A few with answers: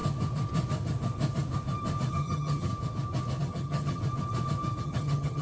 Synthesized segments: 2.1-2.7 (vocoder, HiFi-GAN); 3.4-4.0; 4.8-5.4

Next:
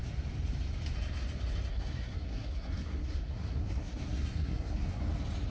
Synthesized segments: 1.7-5.0 (codec, SNAC)

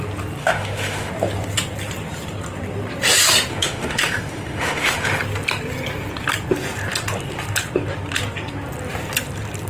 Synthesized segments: 0.4-1.1 (autoencoder, DAC-VAE); 3.5-5.2

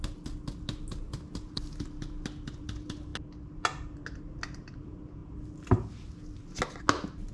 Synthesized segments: none

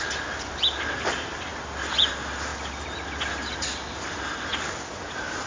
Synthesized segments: none

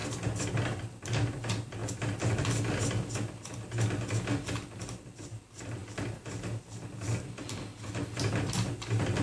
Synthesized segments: 1.8-2.6 (vocoder, BigVGAN v2); 5.8-6.9; 7.7-8.3

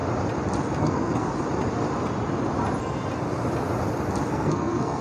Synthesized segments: 0.8-1.3 (codec, SNAC); 4.3-5.0